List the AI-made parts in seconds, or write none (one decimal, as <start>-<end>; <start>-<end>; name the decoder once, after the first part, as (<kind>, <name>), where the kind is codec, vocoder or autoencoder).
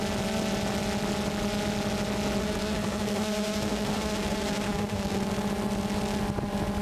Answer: 2.4-5.2 (codec, SNAC)